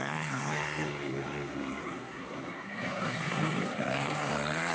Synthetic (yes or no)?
yes